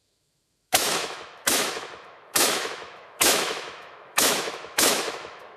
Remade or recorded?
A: remade